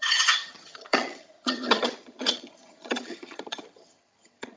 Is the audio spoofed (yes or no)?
yes